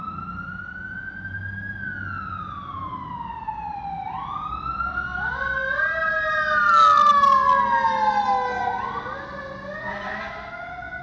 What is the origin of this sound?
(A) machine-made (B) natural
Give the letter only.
B